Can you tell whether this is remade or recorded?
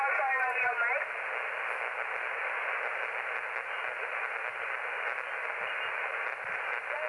recorded